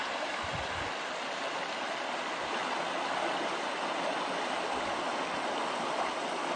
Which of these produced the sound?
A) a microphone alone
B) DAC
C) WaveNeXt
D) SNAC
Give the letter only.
A